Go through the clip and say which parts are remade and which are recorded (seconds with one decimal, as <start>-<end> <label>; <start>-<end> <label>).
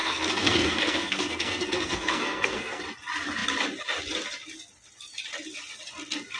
0.0-2.8 remade; 2.8-6.4 recorded